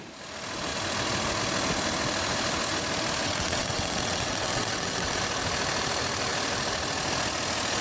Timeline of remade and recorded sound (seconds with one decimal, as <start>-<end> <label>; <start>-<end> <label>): 0.0-3.2 recorded; 3.2-5.2 remade; 5.2-7.8 recorded